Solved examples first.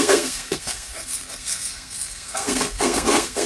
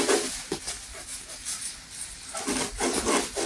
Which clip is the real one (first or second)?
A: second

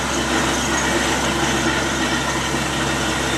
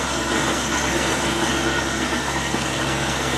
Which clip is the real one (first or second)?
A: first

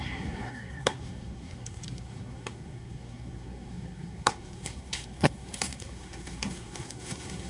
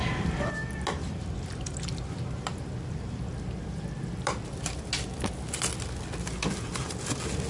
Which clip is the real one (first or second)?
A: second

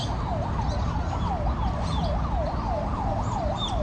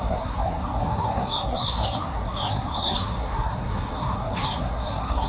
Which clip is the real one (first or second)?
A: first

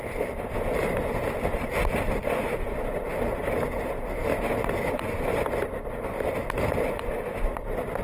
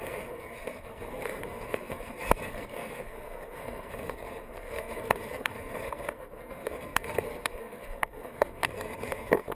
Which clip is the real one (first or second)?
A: first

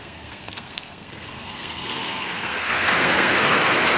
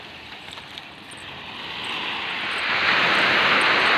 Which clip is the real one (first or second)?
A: second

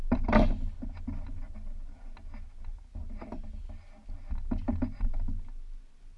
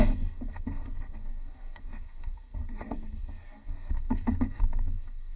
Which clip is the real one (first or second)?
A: first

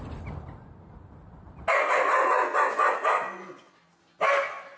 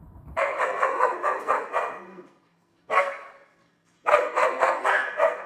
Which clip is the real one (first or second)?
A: first